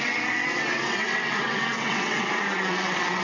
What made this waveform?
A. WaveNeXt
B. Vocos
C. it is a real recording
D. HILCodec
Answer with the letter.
A